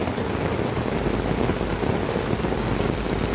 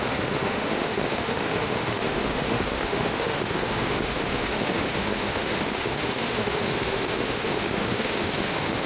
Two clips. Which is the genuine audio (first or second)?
first